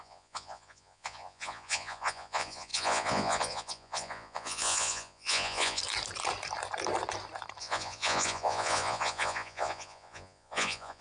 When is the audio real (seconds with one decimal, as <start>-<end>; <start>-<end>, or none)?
5.8-7.6